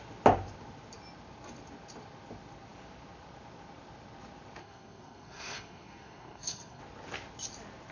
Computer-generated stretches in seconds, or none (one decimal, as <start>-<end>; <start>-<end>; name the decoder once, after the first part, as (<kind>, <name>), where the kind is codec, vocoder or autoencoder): 4.6-6.8 (codec, SNAC)